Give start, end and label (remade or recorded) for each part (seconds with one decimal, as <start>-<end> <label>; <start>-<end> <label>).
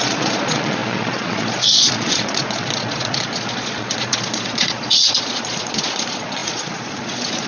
0.0-7.5 remade